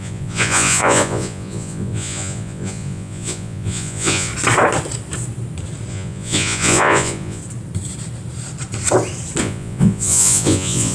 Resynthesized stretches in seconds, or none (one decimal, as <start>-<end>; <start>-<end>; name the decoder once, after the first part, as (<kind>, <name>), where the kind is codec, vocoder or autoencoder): 0.0-4.3 (vocoder, Vocos); 5.9-7.4; 9.4-10.9